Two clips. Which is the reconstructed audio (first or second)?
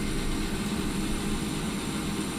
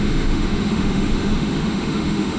second